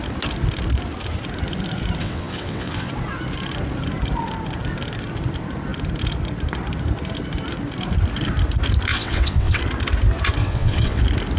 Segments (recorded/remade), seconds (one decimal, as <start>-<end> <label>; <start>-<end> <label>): 0.0-2.0 recorded; 2.0-2.9 remade; 2.9-8.9 recorded; 8.9-9.6 remade; 9.6-10.4 recorded; 10.4-11.0 remade; 11.0-11.4 recorded